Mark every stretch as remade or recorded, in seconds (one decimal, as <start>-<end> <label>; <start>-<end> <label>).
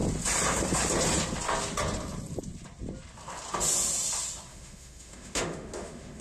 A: 0.0-4.5 recorded; 4.5-6.2 remade